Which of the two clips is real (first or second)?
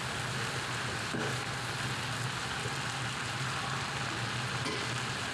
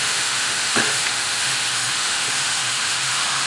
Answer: first